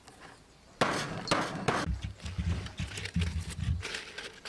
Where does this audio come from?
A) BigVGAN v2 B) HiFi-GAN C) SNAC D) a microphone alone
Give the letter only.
D